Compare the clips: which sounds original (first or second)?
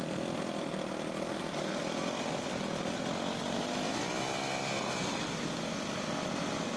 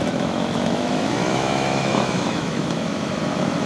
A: first